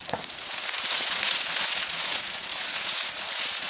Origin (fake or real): fake